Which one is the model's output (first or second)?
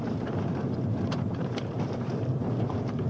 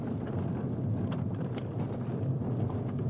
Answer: first